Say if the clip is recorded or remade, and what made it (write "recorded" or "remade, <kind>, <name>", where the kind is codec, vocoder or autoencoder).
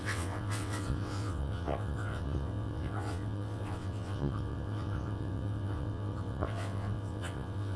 remade, vocoder, WaveNeXt